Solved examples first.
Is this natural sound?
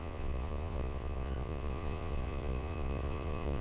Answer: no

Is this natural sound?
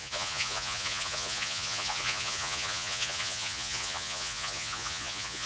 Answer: no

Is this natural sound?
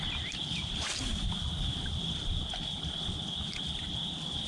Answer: no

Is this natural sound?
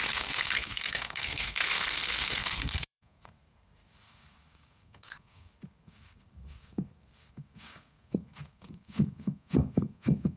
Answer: no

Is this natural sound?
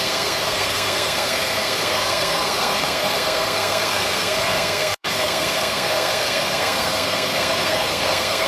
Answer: no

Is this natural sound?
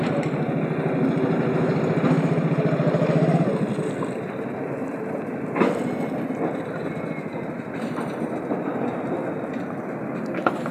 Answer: yes